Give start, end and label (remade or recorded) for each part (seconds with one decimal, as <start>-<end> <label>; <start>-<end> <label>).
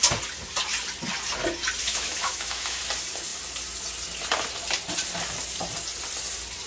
0.0-1.8 recorded; 1.8-2.8 remade; 2.8-6.7 recorded